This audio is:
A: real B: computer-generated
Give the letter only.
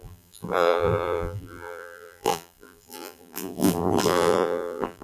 B